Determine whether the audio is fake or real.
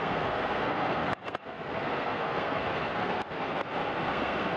fake